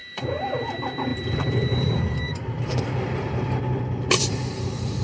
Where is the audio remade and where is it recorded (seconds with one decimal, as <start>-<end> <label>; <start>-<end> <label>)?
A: 0.0-5.0 remade